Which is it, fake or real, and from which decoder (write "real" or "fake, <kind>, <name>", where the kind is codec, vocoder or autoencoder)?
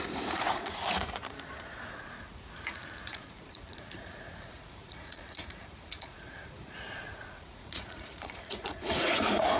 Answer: fake, vocoder, Vocos